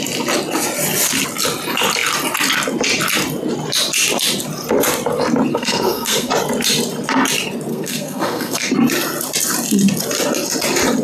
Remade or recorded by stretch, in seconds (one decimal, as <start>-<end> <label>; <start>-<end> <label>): 0.0-5.5 recorded; 5.5-6.3 remade; 6.3-7.7 recorded; 7.7-8.7 remade; 8.7-11.0 recorded

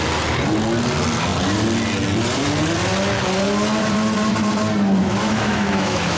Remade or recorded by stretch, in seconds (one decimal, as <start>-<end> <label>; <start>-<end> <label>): 0.0-5.0 recorded; 5.0-6.2 remade

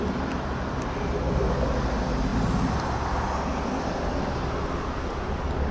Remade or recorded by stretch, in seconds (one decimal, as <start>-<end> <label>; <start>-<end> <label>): 0.0-5.7 recorded

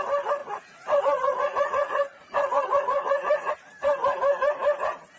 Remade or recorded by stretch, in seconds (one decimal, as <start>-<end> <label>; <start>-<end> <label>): 0.0-0.4 recorded; 0.4-3.5 remade; 3.5-5.2 recorded

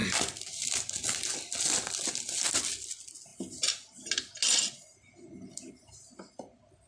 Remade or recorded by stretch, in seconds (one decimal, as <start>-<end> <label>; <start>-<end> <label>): 0.0-6.9 recorded

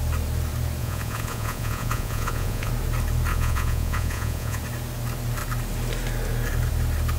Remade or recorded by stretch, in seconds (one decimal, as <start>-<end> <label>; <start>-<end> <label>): 0.0-0.8 recorded; 0.8-2.7 remade; 2.7-3.3 recorded; 3.3-4.6 remade; 4.6-7.2 recorded